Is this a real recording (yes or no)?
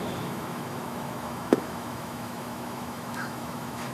no